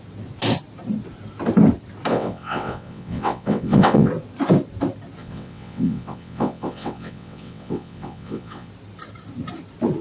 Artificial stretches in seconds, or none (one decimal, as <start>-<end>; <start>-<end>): 2.1-4.1; 5.2-8.7